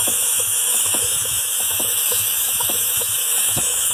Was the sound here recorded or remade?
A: remade